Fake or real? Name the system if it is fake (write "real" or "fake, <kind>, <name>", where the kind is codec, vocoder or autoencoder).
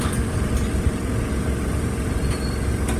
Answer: fake, vocoder, BigVGAN v2